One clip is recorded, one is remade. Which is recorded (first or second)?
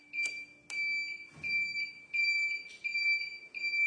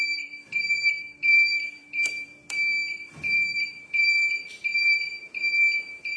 first